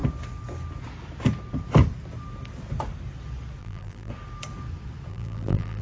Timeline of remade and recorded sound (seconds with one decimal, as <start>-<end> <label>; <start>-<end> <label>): 0.0-3.6 recorded; 3.6-4.1 remade; 4.1-5.1 recorded; 5.1-5.8 remade